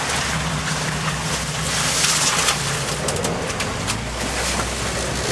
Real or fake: real